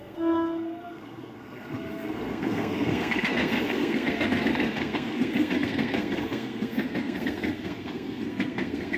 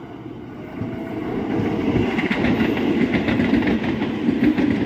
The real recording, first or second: second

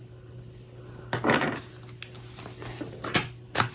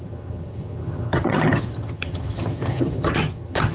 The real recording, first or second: first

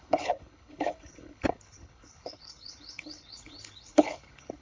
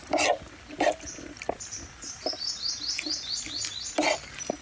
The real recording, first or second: second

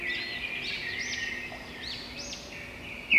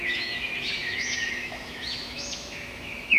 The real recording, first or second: first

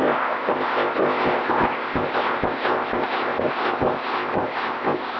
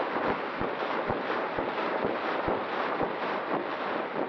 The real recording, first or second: second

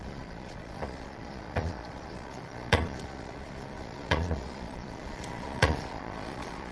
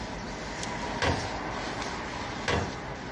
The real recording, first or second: second